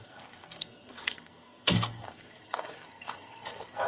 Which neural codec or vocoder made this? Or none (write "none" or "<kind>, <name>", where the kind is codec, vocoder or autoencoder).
codec, SNAC